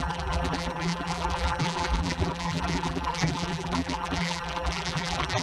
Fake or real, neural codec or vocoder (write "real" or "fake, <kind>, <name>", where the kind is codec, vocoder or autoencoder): fake, vocoder, BigVGAN v2